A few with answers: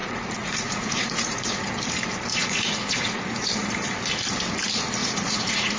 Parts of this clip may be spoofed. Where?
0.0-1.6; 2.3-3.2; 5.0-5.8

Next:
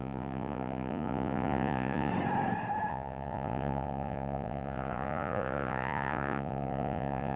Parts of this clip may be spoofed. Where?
0.0-2.1; 2.9-7.4

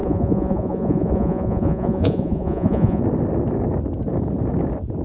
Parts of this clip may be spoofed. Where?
0.0-3.0

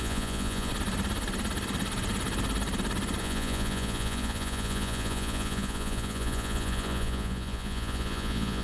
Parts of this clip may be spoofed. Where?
0.0-0.7; 3.2-8.6